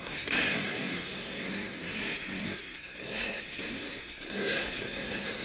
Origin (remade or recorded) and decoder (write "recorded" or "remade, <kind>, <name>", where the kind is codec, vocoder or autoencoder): remade, codec, SNAC